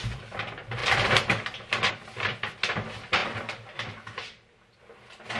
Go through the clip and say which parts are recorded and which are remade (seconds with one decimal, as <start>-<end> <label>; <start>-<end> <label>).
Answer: 0.0-5.4 recorded